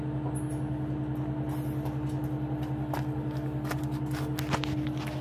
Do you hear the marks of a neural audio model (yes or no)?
no